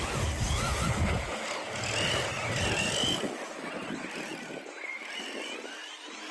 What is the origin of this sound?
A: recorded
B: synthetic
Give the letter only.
A